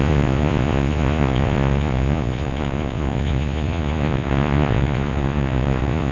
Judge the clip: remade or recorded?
remade